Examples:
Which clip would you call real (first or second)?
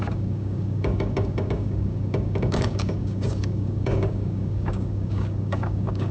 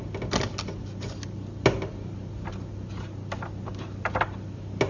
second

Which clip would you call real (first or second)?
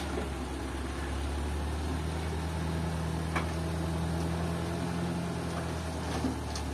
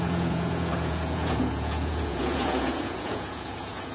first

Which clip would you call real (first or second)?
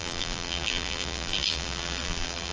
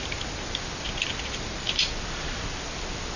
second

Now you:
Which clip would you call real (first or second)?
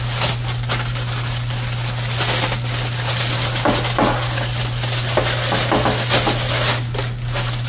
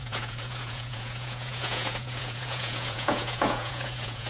first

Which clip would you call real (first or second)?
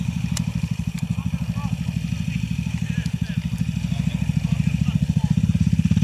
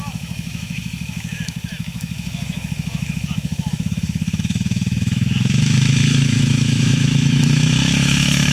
first